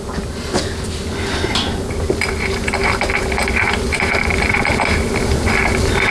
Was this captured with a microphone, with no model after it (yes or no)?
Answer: yes